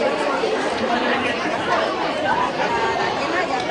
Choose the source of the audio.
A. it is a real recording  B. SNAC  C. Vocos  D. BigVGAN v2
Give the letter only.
D